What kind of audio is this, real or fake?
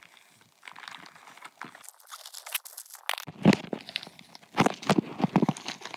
real